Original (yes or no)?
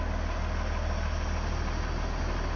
yes